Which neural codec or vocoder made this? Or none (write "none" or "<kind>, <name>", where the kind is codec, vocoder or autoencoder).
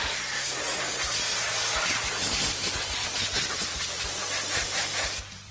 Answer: none